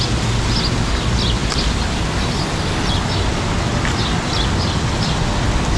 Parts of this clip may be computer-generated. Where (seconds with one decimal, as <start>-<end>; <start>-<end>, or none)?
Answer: none